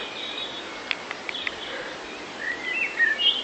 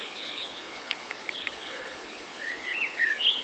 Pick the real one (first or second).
first